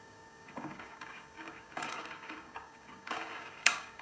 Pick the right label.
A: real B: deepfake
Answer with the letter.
B